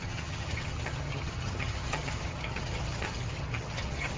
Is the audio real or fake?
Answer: fake